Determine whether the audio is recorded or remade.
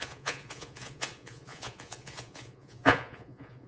remade